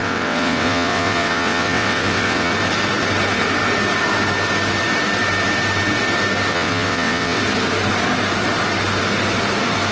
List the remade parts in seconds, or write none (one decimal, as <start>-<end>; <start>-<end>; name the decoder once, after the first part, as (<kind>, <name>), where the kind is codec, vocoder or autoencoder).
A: 0.0-2.5 (vocoder, WaveNeXt); 6.5-7.4